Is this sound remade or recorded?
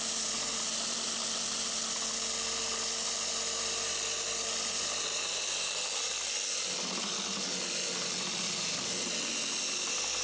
recorded